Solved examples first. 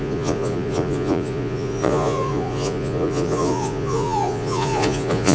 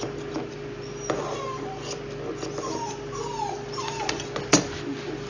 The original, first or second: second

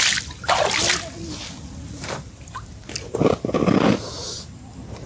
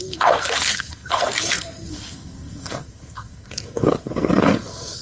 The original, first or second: first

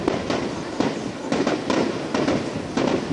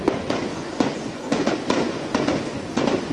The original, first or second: first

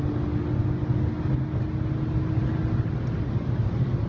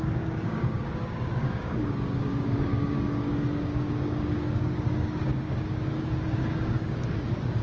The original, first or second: first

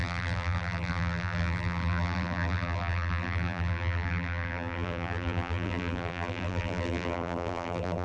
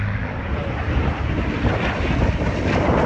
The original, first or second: second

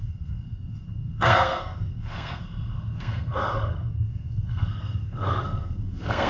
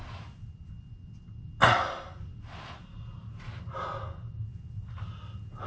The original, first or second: second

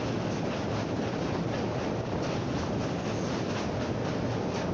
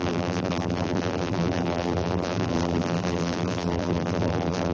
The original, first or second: first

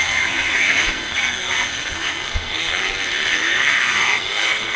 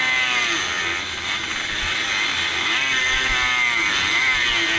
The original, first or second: second